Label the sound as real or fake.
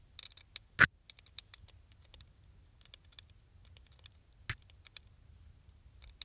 real